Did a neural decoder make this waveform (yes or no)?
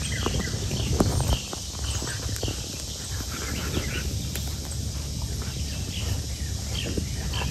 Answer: no